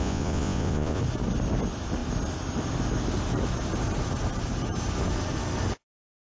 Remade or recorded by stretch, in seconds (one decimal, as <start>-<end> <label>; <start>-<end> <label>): 0.0-1.0 remade; 1.0-6.2 recorded

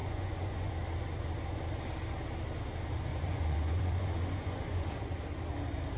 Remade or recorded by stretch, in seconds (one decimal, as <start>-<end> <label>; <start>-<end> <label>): 0.0-0.7 remade; 0.7-3.1 recorded; 3.1-4.9 remade; 4.9-6.0 recorded

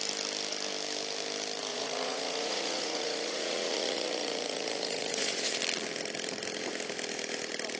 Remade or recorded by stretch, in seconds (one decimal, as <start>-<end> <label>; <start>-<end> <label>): 0.0-1.7 recorded; 1.7-5.6 remade; 5.6-7.8 recorded

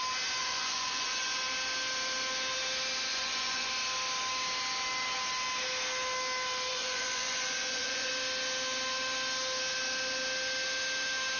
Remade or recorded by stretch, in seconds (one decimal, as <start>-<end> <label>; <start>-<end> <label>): 0.0-0.4 recorded; 0.4-1.4 remade; 1.4-3.1 recorded; 3.1-3.7 remade; 3.7-6.7 recorded; 6.7-8.1 remade; 8.1-11.4 recorded

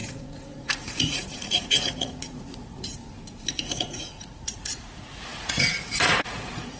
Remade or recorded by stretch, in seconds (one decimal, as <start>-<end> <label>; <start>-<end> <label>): 0.0-3.0 remade; 3.0-3.6 recorded; 3.6-6.8 remade